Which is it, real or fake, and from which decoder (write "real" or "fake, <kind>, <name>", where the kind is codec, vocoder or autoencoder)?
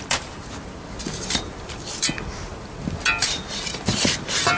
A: real